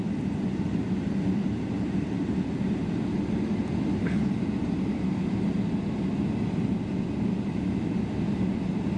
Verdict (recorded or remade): recorded